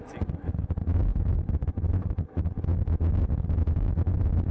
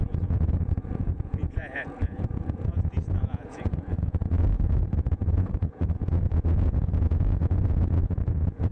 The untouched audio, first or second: first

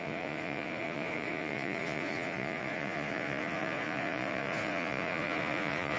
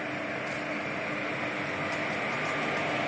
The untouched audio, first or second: second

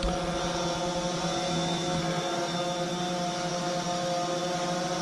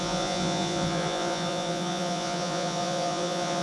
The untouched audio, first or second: first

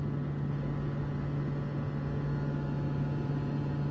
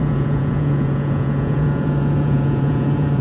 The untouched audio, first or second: first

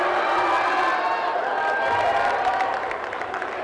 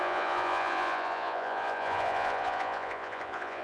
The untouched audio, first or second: first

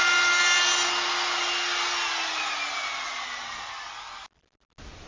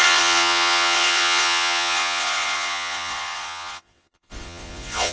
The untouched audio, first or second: first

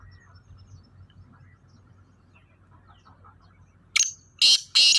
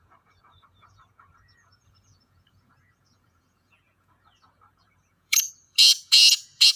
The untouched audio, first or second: first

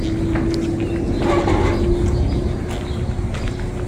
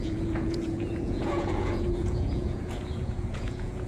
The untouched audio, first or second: first